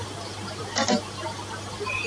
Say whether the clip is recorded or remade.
recorded